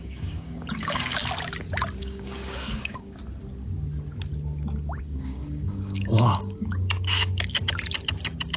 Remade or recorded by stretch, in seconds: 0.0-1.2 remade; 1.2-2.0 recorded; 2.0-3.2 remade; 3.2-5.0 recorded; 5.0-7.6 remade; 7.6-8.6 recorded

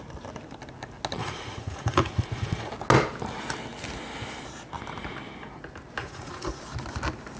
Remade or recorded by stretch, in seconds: 0.0-1.2 recorded; 1.2-2.7 remade; 2.7-6.0 recorded; 6.0-6.6 remade; 6.6-7.4 recorded